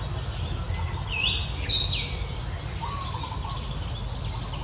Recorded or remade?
recorded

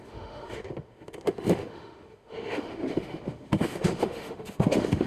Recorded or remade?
remade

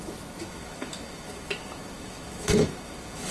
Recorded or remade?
remade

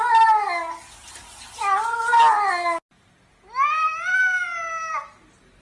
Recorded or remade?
recorded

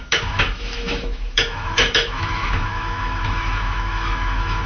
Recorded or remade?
remade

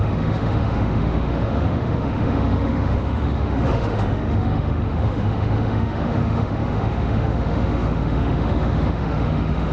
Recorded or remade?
remade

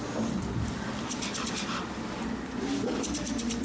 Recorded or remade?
recorded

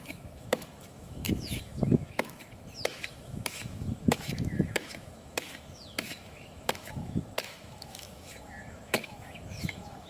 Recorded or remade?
remade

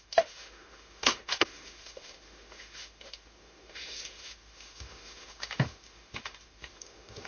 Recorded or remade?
remade